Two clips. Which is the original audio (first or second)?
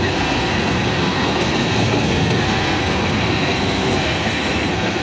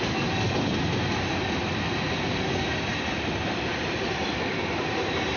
second